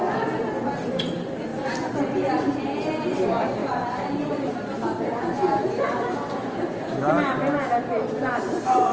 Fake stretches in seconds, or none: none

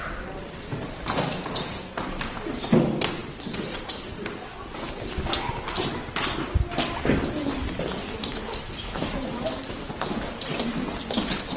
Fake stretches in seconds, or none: 8.3-9.9 (autoencoder, DAC-VAE)

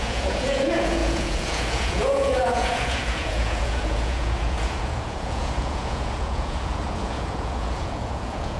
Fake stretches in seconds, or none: 0.0-8.6 (vocoder, Vocos)

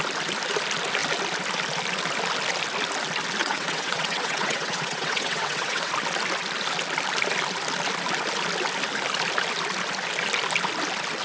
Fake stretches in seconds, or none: 3.4-5.9 (vocoder, WaveNeXt)

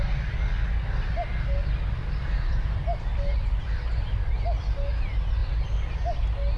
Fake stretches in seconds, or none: 2.0-4.3 (vocoder, BigVGAN v2)